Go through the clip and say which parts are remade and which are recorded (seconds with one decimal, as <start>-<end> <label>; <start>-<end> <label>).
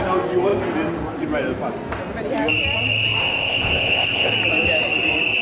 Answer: 0.0-3.2 recorded; 3.2-4.3 remade; 4.3-5.4 recorded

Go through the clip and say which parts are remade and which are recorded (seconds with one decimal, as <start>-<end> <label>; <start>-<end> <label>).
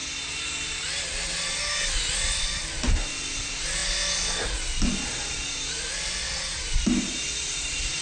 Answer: 0.0-3.3 recorded; 3.3-3.8 remade; 3.8-5.3 recorded; 5.3-8.0 remade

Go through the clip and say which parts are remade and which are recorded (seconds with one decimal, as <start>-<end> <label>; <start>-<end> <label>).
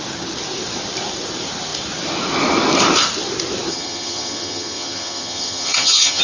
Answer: 0.0-3.7 recorded; 3.7-6.2 remade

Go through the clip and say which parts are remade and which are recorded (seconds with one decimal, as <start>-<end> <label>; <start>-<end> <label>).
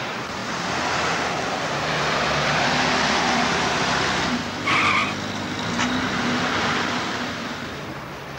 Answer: 0.0-0.4 remade; 0.4-2.0 recorded; 2.0-5.0 remade; 5.0-6.5 recorded; 6.5-8.4 remade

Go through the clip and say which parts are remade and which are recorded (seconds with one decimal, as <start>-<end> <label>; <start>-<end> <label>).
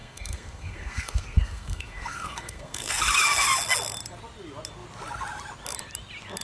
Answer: 0.0-3.0 remade; 3.0-6.4 recorded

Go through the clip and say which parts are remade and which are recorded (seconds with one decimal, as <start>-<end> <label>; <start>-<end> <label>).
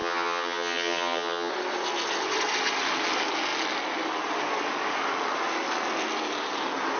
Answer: 0.0-1.5 remade; 1.5-7.0 recorded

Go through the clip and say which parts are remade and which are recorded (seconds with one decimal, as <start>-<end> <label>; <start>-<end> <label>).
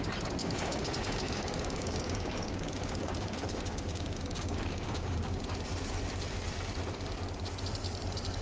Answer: 0.0-0.4 recorded; 0.4-5.4 remade; 5.4-8.4 recorded